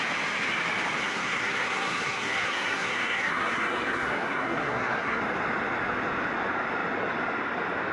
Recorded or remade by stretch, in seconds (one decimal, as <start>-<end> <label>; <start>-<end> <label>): 0.0-1.0 recorded; 1.0-5.2 remade; 5.2-7.9 recorded